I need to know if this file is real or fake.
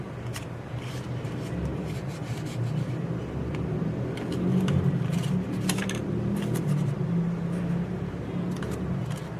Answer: real